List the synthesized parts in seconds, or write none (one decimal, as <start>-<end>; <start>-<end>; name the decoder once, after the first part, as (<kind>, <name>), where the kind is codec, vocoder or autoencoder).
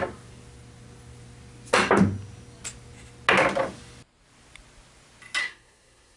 5.4-6.2 (codec, SNAC)